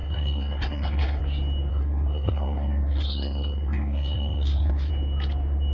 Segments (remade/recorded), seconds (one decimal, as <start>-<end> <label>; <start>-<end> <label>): 0.0-1.2 remade; 1.2-1.7 recorded; 1.7-4.9 remade; 4.9-5.7 recorded